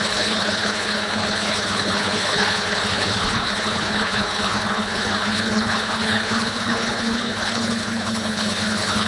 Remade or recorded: remade